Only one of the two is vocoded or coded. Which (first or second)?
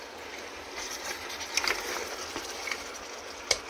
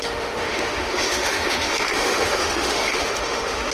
second